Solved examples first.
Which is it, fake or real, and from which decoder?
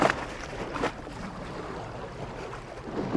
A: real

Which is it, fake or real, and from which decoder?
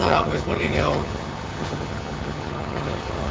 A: fake, vocoder, HiFi-GAN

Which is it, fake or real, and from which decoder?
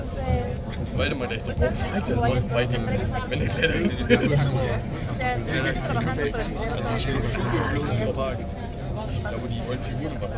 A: real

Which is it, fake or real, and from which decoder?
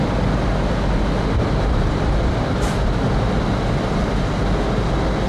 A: real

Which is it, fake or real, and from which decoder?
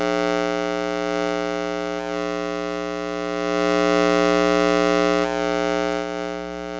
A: real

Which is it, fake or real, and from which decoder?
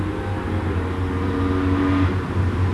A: real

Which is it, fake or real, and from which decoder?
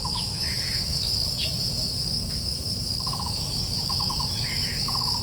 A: fake, autoencoder, DAC-VAE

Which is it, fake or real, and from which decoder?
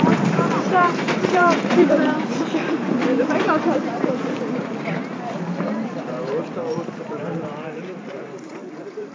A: fake, vocoder, BigVGAN v2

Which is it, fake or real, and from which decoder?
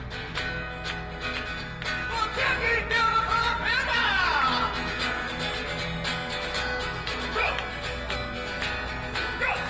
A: real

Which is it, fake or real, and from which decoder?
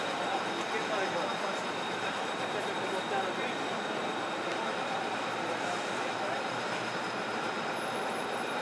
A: real